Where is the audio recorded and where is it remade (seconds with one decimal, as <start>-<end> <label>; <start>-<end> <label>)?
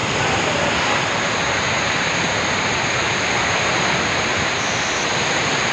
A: 0.0-5.7 recorded